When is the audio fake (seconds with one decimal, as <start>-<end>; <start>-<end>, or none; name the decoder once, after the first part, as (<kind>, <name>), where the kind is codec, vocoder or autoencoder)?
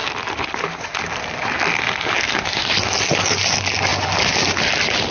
none